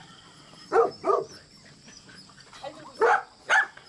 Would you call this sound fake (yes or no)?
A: no